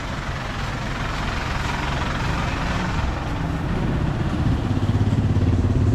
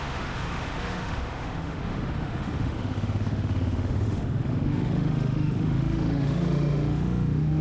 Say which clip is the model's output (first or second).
second